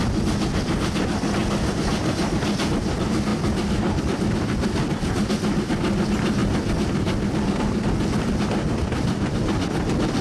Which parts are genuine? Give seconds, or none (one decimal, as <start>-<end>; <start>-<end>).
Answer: 0.0-10.2